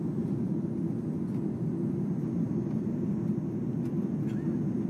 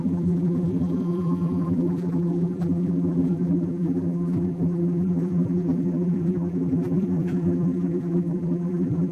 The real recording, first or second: first